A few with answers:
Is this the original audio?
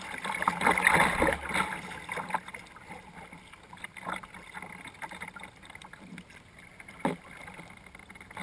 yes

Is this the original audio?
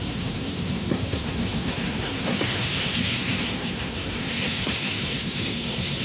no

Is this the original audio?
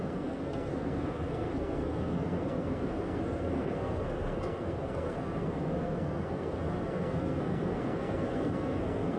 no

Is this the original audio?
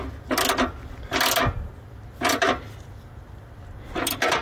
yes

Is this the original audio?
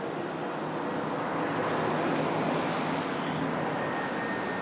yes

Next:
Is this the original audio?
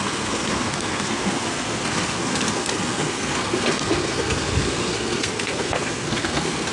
no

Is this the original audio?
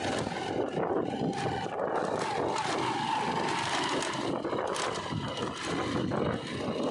yes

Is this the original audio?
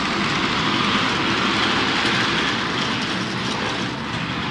yes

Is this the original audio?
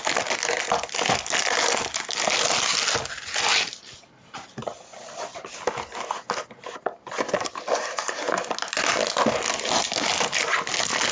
yes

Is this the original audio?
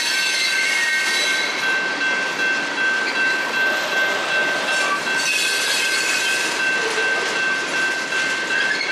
yes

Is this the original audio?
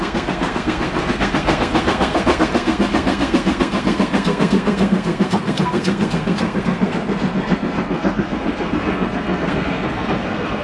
no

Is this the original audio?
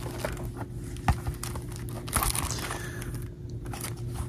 yes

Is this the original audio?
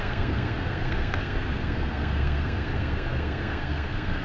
no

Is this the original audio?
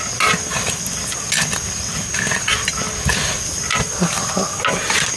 yes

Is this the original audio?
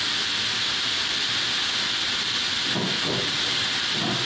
yes